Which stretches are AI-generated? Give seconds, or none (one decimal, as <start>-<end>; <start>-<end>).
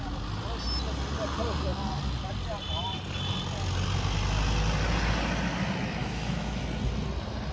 6.0-6.6